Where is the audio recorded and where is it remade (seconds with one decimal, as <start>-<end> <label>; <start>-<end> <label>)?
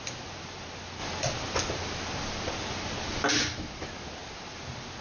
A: 0.0-5.0 recorded